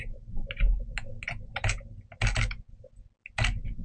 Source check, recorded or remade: recorded